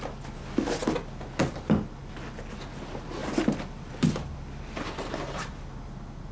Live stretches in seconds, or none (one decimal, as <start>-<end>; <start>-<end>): 0.0-6.3